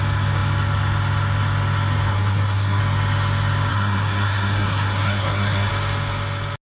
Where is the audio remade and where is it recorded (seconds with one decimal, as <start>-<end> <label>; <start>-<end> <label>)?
0.0-2.1 recorded; 2.1-2.8 remade; 2.8-3.7 recorded; 3.7-5.7 remade; 5.7-6.8 recorded